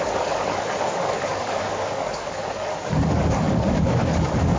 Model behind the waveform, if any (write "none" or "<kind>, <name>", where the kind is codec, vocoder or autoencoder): codec, DAC